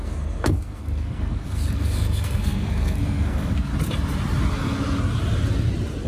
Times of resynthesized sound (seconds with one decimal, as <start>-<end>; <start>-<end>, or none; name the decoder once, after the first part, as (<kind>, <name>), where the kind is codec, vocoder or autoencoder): 0.0-3.7 (codec, SNAC)